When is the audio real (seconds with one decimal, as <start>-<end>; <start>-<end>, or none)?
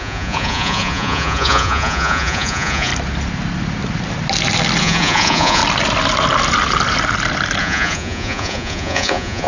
2.9-4.8; 5.6-7.6